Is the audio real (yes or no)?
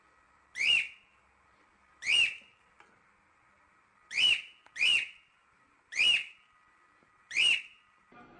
yes